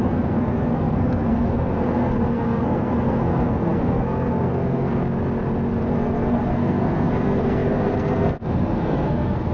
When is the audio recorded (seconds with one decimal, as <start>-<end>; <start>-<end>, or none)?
5.0-5.9